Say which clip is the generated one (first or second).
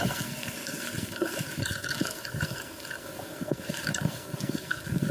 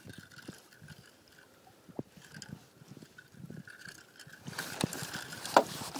first